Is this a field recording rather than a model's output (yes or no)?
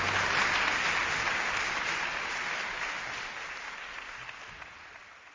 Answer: yes